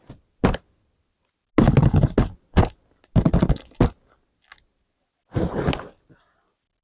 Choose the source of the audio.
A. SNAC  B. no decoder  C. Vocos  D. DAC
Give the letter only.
B